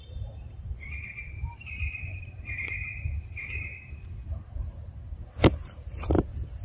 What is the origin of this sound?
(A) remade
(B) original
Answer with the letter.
A